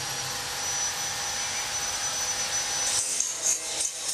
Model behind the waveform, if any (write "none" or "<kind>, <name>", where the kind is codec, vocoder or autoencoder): none